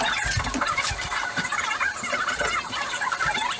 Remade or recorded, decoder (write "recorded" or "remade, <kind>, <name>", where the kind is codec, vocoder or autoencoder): recorded